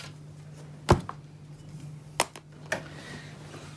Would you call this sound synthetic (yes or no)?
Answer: no